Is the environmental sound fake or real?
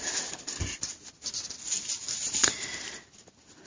real